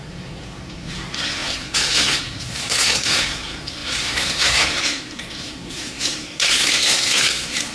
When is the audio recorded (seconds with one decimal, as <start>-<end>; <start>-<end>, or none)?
none